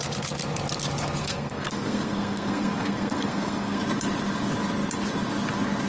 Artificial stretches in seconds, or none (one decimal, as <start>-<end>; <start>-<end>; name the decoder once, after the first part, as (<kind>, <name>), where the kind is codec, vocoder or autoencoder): 1.2-3.8 (codec, SNAC)